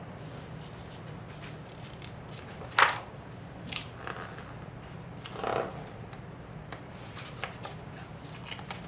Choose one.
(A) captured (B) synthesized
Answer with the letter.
A